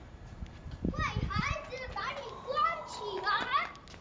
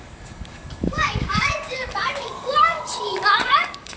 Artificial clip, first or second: second